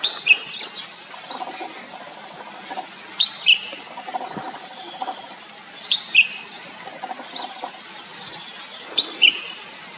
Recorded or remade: recorded